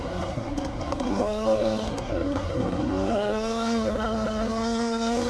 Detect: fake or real fake